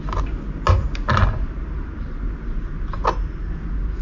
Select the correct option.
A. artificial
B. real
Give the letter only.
B